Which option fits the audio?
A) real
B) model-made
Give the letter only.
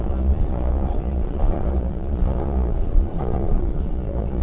B